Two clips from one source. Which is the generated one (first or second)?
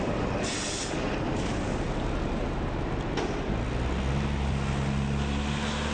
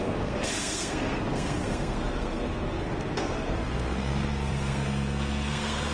second